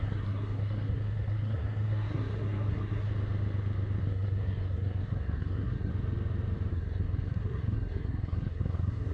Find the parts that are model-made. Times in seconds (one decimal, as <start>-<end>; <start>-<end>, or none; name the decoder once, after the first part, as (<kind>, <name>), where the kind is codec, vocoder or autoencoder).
0.0-3.1 (codec, SNAC); 4.0-5.9; 6.7-9.1